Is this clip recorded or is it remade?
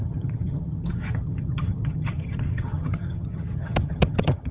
remade